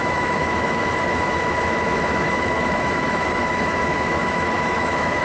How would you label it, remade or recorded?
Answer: remade